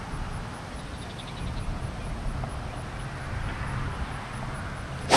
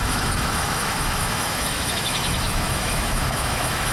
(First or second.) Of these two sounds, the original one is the first